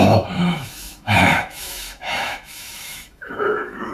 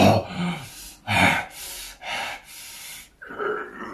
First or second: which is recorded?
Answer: second